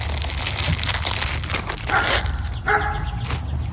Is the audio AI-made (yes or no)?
no